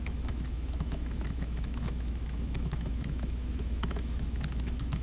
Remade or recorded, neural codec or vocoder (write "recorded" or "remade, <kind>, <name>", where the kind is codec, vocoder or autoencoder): remade, autoencoder, DAC-VAE